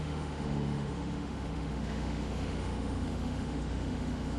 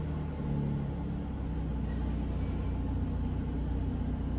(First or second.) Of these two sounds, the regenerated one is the first